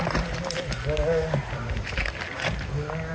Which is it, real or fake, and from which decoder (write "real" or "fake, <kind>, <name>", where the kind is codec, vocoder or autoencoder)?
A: real